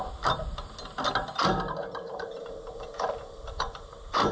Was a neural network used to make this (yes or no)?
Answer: no